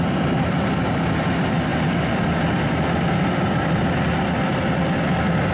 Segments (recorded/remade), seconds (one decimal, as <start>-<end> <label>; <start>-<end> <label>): 0.0-5.5 recorded